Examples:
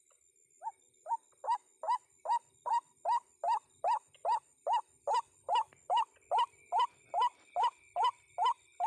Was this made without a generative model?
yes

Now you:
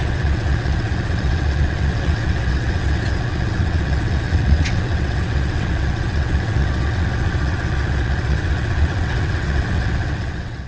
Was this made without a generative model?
no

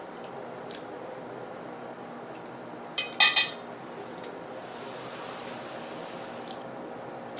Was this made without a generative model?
yes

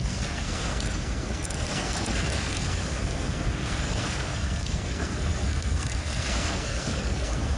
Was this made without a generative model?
no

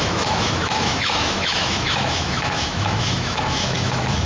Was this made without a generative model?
no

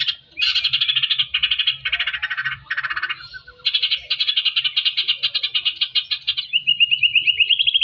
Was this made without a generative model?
yes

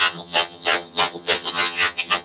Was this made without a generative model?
no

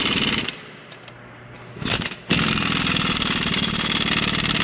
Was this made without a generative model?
yes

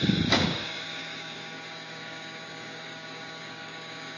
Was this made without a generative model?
no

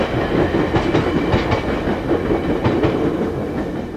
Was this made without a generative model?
yes